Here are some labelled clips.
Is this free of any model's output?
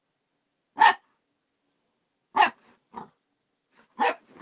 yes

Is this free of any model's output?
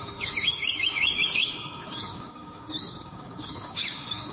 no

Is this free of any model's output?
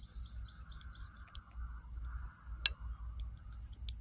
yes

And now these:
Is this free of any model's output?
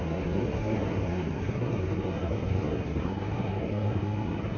no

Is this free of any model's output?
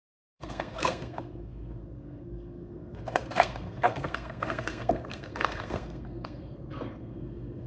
no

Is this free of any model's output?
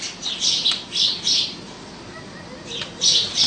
yes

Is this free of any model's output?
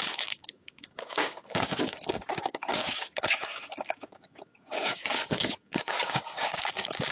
no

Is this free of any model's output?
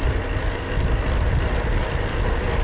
yes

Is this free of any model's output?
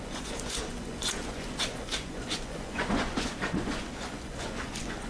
no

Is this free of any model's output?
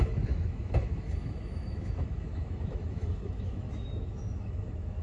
no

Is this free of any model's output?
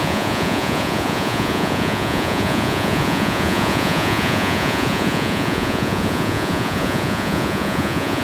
no